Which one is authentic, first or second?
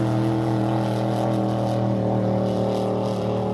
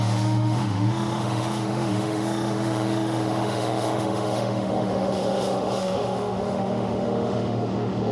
first